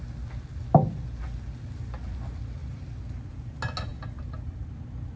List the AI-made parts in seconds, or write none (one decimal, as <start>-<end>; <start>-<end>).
2.6-3.5